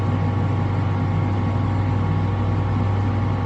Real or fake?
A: real